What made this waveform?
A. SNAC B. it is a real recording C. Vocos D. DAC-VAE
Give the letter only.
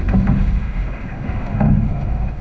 D